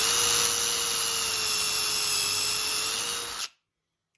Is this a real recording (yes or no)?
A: yes